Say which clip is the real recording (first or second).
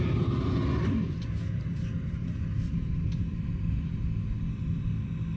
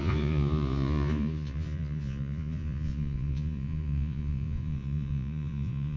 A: first